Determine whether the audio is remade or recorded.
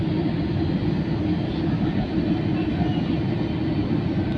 recorded